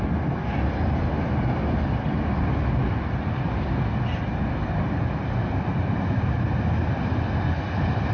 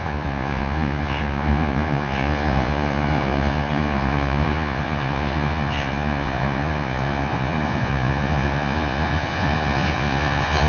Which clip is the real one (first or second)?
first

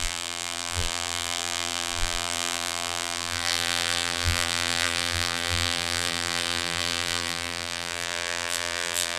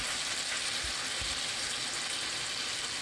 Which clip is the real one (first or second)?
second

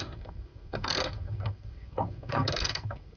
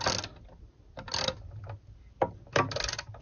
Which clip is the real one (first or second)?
second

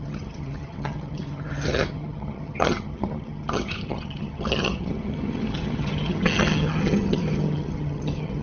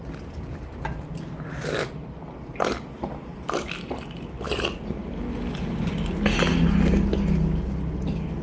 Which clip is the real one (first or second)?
second